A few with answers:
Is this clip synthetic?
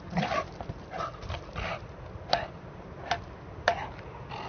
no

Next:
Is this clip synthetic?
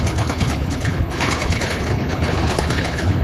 yes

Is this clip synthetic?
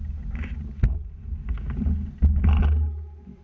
no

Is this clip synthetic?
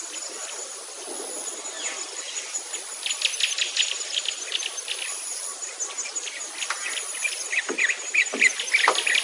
no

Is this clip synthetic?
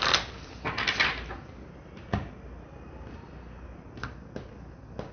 no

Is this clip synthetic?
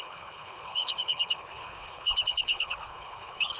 yes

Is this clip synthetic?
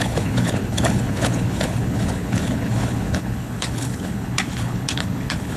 yes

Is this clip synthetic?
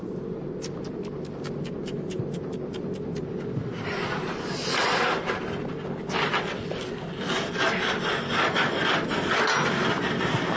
no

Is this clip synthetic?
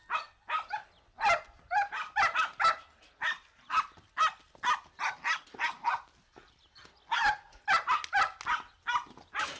no